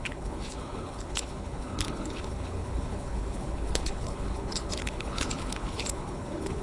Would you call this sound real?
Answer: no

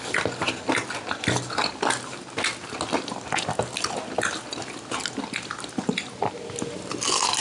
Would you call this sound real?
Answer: yes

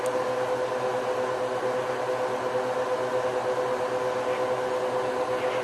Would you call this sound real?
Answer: yes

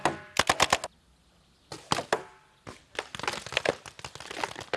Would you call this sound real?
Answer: yes